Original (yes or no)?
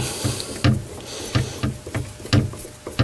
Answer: yes